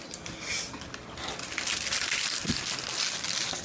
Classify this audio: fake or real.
real